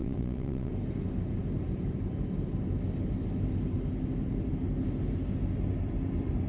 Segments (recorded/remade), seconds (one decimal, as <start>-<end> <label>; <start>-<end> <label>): 0.0-0.7 remade; 0.7-6.5 recorded

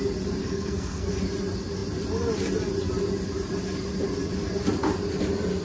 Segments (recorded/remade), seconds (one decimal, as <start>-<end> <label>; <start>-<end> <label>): 0.0-0.4 recorded; 0.4-1.1 remade; 1.1-5.6 recorded

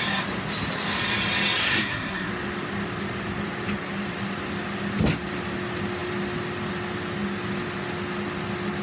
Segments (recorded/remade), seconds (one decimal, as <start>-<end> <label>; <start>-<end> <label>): 0.0-1.6 recorded; 1.6-2.3 remade; 2.3-8.8 recorded